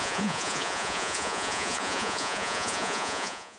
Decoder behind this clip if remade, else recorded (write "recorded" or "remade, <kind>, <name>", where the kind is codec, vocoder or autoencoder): remade, vocoder, Vocos